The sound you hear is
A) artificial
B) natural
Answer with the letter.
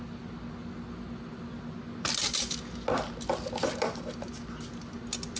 B